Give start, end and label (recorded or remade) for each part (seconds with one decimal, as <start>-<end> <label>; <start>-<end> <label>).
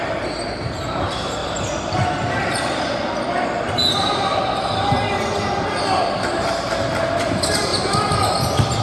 0.0-3.0 remade; 3.0-7.0 recorded; 7.0-7.7 remade; 7.7-8.8 recorded